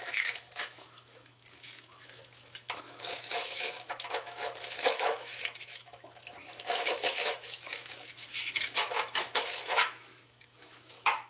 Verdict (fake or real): fake